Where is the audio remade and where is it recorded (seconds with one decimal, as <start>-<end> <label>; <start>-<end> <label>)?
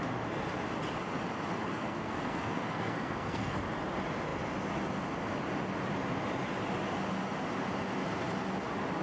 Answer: 0.0-1.7 recorded; 1.7-3.6 remade; 3.6-9.0 recorded